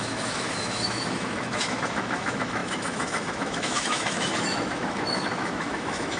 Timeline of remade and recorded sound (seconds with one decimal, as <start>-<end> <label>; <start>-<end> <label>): 0.0-6.2 remade

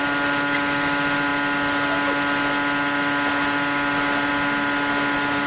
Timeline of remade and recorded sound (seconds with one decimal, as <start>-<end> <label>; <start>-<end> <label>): 0.0-5.5 recorded

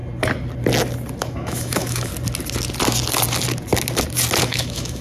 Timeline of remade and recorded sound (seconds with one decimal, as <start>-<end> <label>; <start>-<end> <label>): 0.0-1.2 recorded; 1.2-2.1 remade; 2.1-4.4 recorded; 4.4-5.0 remade